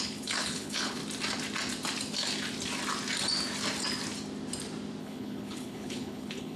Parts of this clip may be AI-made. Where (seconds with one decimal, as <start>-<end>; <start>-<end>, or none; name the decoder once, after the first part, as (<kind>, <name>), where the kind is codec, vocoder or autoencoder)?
0.0-1.0 (codec, HILCodec); 5.0-6.6